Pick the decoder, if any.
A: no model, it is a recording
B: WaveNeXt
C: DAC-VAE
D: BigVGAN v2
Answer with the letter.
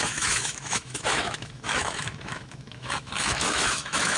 C